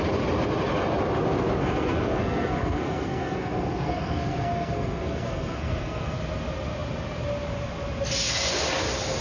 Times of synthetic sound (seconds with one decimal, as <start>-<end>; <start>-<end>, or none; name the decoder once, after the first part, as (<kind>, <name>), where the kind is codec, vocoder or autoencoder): 1.6-6.2 (codec, SNAC)